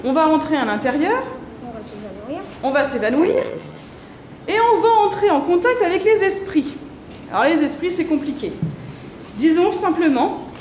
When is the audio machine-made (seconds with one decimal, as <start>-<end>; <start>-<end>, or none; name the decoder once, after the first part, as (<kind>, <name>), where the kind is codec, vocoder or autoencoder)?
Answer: 3.2-3.8 (vocoder, HiFi-GAN)

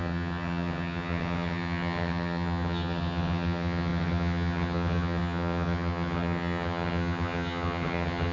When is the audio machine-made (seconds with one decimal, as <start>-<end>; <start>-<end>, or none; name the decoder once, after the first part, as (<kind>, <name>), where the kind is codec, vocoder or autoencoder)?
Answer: 0.0-8.3 (vocoder, HiFi-GAN)

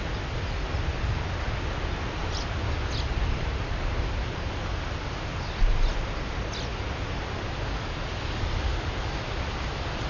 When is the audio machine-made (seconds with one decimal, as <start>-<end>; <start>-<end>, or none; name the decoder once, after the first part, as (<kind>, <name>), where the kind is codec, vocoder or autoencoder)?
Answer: none

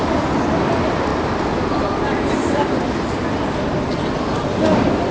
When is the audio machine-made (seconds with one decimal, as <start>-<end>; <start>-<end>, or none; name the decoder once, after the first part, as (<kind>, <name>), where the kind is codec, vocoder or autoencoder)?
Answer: none

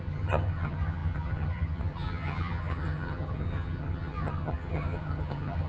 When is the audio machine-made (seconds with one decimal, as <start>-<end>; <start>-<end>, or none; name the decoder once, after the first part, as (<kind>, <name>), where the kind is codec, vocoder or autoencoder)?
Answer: 0.0-5.7 (vocoder, HiFi-GAN)

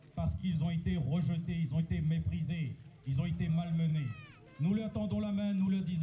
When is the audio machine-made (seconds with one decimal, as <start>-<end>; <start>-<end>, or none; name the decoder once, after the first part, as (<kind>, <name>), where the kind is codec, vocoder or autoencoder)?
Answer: none

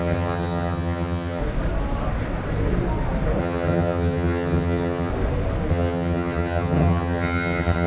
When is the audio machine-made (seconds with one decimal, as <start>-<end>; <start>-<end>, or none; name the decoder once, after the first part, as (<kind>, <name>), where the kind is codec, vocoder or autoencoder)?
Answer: 0.0-1.4 (vocoder, HiFi-GAN); 3.4-5.1; 5.7-7.9